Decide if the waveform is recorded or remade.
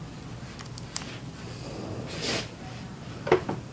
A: remade